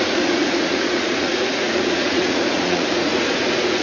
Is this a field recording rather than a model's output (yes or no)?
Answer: no